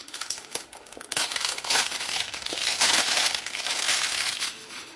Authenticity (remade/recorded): remade